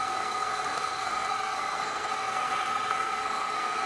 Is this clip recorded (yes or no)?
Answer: no